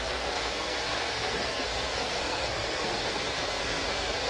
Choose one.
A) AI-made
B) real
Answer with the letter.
A